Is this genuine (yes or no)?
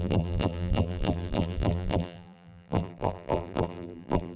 no